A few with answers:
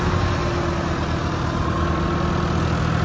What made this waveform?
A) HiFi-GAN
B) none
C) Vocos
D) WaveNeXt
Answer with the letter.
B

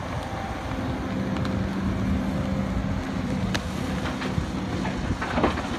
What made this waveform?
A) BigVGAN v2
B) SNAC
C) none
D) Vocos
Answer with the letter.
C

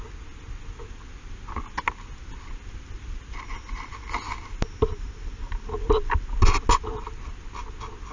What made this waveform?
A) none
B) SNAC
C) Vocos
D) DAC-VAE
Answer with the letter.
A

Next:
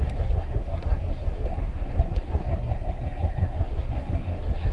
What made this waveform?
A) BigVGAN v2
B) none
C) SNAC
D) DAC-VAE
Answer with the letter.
C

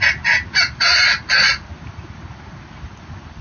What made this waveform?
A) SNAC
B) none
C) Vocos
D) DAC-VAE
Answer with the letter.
B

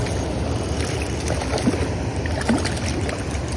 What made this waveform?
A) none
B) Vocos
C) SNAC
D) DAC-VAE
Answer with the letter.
A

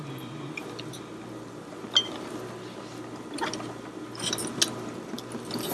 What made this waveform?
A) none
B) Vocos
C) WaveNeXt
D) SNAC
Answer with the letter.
A